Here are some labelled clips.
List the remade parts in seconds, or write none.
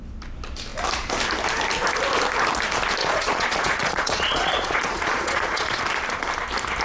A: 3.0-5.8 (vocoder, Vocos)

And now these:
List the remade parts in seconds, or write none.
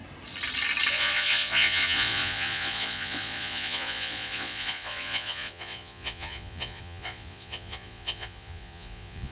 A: 0.9-9.3 (vocoder, Vocos)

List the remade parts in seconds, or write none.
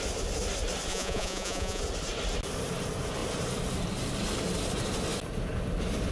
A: 0.9-1.8 (vocoder, Vocos)